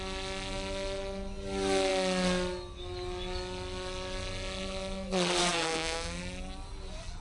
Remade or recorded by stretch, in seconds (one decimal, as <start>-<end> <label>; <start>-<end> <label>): 0.0-5.4 recorded; 5.4-6.2 remade; 6.2-7.2 recorded